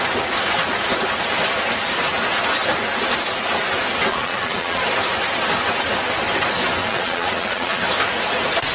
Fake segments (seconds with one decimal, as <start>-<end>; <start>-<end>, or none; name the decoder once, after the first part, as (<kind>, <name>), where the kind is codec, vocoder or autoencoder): 4.1-4.8 (vocoder, Vocos); 6.8-7.8